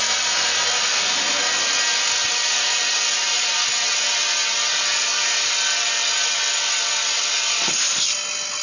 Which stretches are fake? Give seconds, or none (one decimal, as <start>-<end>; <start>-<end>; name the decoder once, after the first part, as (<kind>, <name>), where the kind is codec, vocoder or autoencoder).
none

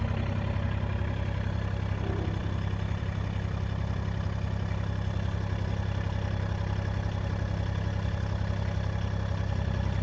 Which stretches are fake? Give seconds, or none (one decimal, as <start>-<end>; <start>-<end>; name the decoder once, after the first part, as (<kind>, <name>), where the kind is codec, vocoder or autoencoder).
none

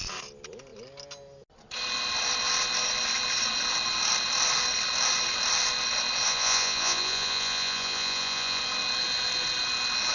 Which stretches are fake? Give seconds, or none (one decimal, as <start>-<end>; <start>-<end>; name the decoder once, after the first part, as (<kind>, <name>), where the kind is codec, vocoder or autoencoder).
6.3-8.6 (vocoder, Vocos)

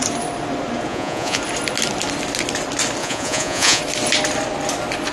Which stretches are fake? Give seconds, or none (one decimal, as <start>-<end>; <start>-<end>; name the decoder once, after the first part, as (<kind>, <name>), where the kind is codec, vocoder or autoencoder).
0.9-1.4 (vocoder, Vocos); 3.0-3.8